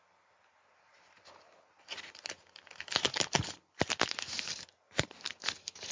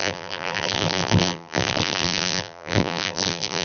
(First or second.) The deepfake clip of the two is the second